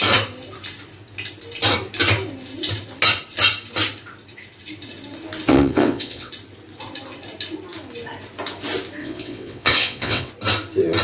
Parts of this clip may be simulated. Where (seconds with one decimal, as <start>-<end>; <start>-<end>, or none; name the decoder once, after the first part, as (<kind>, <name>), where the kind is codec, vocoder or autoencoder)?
5.5-6.3 (vocoder, WaveNeXt); 9.0-10.3